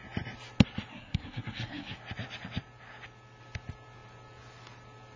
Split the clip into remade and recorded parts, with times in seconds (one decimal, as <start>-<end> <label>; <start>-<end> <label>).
0.0-0.9 recorded; 0.9-2.0 remade; 2.0-5.2 recorded